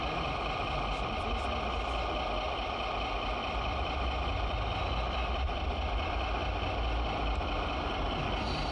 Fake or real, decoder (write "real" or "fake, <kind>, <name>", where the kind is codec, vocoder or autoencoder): real